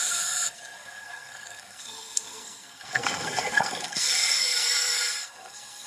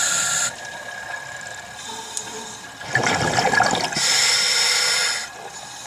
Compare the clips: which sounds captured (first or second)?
second